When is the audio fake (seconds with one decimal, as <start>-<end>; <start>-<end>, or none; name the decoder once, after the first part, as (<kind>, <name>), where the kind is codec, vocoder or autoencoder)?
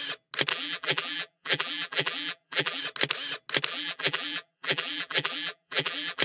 0.5-2.8 (vocoder, BigVGAN v2); 3.7-6.2